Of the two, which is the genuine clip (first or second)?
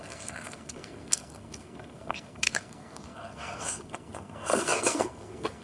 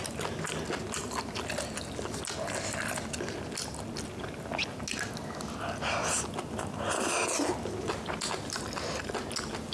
second